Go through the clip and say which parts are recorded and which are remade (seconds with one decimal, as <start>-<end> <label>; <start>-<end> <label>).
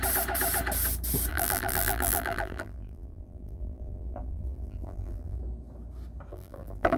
0.0-1.3 recorded; 1.3-5.4 remade; 5.4-6.3 recorded; 6.3-7.0 remade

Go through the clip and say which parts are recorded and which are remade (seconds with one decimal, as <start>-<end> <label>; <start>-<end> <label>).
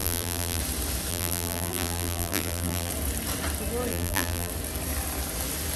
0.0-0.6 remade; 0.6-1.1 recorded; 1.1-2.9 remade; 2.9-3.9 recorded; 3.9-4.5 remade; 4.5-5.8 recorded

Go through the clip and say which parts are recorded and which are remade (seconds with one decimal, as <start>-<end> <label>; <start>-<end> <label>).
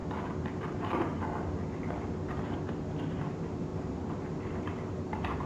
0.0-0.7 recorded; 0.7-1.1 remade; 1.1-3.2 recorded; 3.2-5.5 remade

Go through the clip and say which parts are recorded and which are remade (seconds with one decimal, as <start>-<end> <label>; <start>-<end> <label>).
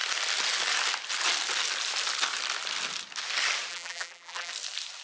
0.0-3.7 recorded; 3.7-4.5 remade; 4.5-5.0 recorded